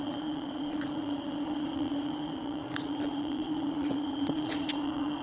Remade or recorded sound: remade